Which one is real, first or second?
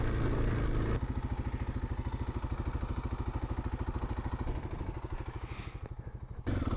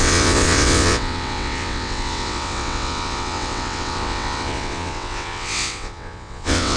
first